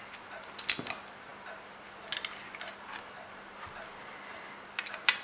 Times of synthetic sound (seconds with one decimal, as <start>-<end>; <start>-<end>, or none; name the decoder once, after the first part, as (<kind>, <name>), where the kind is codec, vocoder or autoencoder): none